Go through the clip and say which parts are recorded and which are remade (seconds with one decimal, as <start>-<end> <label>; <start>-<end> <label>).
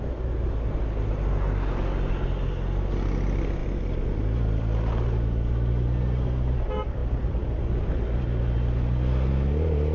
0.0-3.6 recorded; 3.6-4.6 remade; 4.6-9.9 recorded